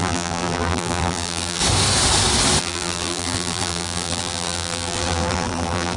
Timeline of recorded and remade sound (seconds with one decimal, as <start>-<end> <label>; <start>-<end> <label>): 0.0-1.6 remade; 1.6-2.6 recorded; 2.6-6.0 remade